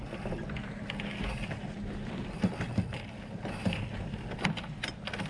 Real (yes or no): yes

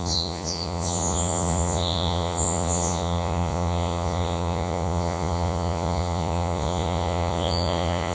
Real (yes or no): no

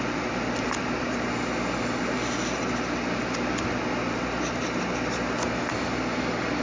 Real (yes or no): yes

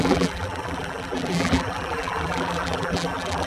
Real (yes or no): no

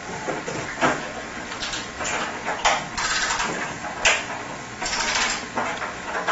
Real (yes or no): yes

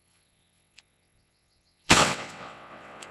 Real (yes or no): no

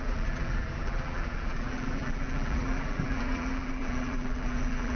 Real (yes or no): no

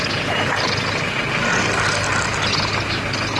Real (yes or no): yes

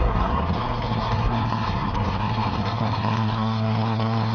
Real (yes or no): no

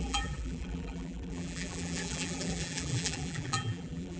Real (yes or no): no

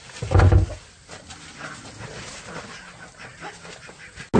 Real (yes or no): yes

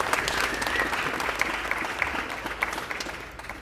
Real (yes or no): yes